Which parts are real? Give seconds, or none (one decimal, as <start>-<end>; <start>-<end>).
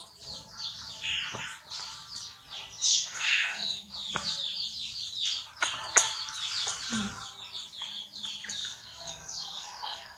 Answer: 0.0-2.9; 3.9-8.6